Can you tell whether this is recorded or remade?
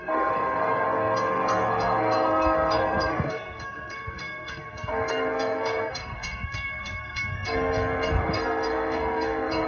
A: remade